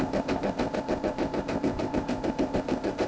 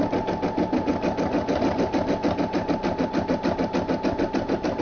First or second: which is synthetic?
first